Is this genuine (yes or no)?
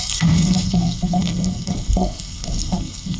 no